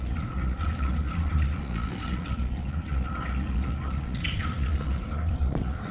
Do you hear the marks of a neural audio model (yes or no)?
yes